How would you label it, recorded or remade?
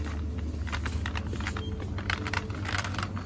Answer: recorded